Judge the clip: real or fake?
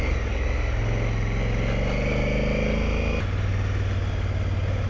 real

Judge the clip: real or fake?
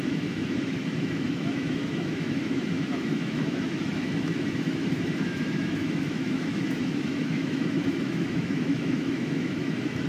fake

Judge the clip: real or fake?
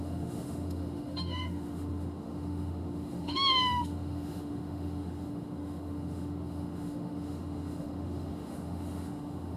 fake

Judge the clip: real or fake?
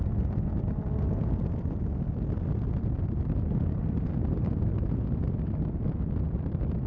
real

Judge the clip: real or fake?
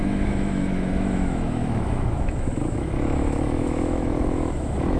fake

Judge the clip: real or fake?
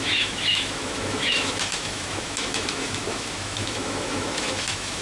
fake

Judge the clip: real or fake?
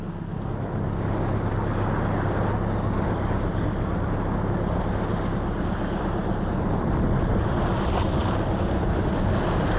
real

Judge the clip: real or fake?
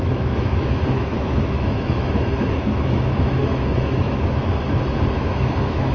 fake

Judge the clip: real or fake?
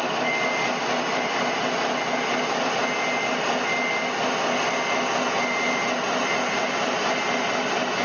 real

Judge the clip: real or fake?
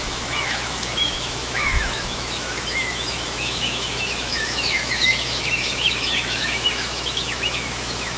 fake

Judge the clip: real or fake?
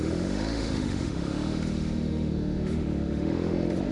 fake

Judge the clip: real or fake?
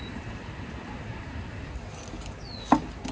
real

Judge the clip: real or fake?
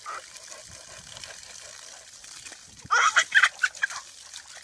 real